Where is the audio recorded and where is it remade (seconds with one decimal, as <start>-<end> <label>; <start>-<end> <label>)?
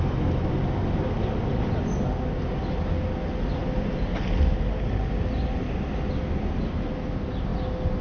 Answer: 0.0-8.0 recorded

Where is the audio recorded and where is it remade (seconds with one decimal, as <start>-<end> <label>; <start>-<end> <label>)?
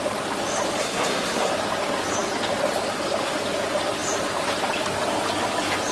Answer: 0.0-0.8 recorded; 0.8-1.5 remade; 1.5-5.9 recorded